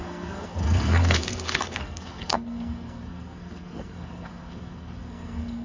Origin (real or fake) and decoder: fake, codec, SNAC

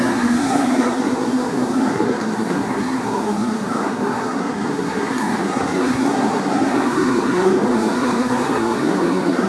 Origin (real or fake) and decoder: fake, codec, SNAC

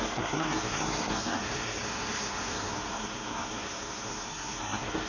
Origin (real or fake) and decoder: fake, codec, SNAC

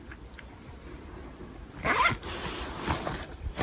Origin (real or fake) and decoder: real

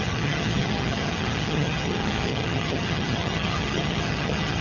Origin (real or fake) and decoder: fake, vocoder, HiFi-GAN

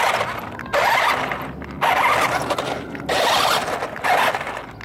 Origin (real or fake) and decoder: real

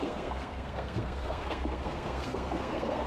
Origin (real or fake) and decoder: fake, codec, SNAC